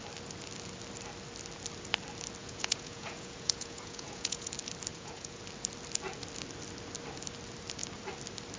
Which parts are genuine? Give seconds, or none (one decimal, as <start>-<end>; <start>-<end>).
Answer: 0.0-2.4; 4.5-4.9; 5.4-8.6